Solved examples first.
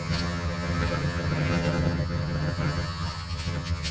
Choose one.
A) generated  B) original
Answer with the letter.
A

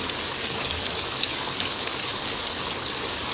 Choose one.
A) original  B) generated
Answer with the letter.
B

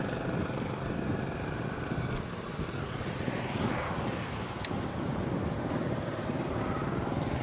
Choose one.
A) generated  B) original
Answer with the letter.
A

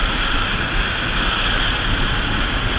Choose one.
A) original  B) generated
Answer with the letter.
A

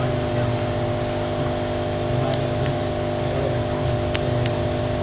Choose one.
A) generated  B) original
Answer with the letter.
B